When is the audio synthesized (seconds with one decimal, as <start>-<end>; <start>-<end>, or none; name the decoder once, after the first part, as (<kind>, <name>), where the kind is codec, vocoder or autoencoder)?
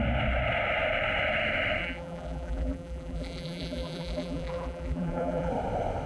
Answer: 1.8-5.5 (vocoder, BigVGAN v2)